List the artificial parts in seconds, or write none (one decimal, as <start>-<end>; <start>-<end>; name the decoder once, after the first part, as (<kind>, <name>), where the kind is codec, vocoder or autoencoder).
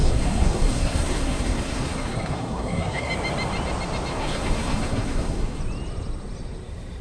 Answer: 0.0-3.1 (codec, SNAC); 4.1-5.6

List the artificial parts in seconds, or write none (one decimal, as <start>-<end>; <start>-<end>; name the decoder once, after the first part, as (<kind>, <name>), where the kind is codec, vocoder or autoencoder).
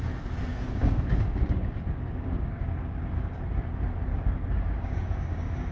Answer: 0.5-3.4 (codec, DAC); 4.1-5.7